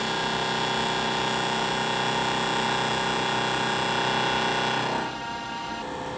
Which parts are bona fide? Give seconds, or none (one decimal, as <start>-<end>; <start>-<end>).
0.0-6.2